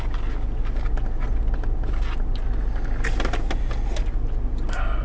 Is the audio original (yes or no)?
yes